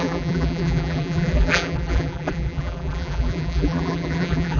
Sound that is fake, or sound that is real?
fake